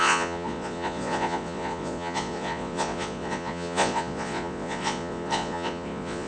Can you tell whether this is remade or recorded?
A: remade